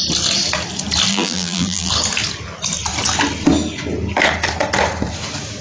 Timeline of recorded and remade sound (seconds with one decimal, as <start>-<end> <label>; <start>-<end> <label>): 0.0-1.1 recorded; 1.1-1.9 remade; 1.9-5.6 recorded